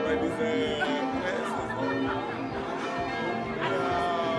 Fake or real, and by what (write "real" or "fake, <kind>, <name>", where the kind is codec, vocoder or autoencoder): real